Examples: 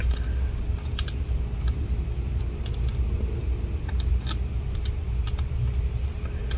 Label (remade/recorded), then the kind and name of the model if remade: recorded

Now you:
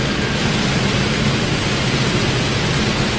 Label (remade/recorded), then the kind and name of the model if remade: recorded